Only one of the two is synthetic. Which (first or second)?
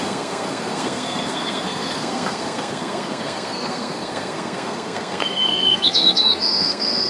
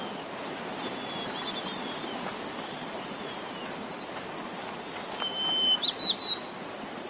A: first